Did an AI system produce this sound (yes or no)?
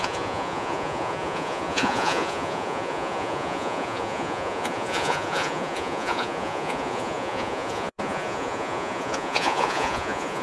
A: yes